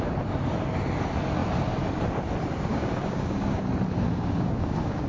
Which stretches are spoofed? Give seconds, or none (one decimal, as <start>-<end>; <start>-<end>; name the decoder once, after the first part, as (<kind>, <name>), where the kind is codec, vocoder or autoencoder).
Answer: 2.7-3.6 (codec, DAC); 4.1-5.1